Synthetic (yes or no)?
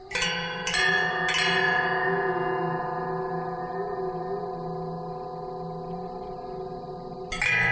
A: no